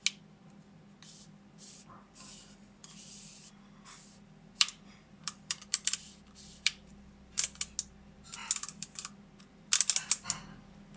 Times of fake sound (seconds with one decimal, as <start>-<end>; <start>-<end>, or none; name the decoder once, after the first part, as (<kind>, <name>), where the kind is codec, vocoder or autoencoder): 2.8-6.9 (vocoder, BigVGAN v2)